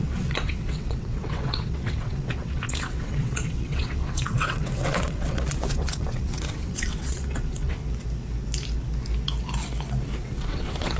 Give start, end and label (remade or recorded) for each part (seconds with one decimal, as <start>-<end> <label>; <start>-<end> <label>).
0.0-7.8 remade; 7.8-10.2 recorded; 10.2-11.0 remade